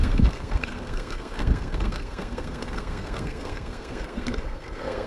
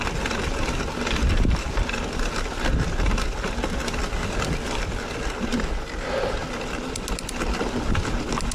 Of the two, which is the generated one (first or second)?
first